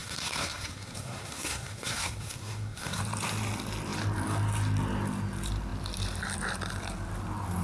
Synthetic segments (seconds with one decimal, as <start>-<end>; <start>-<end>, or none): 0.0-3.0